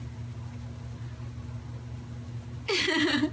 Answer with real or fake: real